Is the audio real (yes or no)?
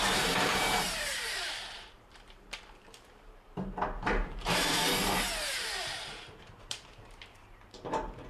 no